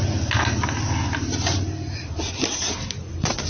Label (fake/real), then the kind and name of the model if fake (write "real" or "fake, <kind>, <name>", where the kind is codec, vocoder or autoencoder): real